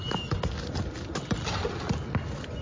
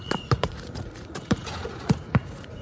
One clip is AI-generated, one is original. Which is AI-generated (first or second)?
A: second